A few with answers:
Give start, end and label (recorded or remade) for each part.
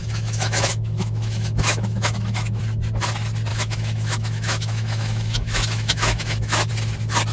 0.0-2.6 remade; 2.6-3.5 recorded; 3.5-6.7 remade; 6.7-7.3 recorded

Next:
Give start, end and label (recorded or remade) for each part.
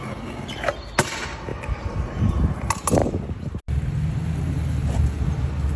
0.0-1.5 recorded; 1.5-2.3 remade; 2.3-3.0 recorded; 3.0-3.6 remade; 3.6-5.8 recorded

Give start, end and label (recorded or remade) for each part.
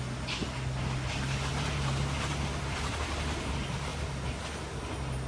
0.0-5.3 recorded